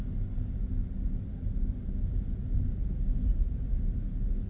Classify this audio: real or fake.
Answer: real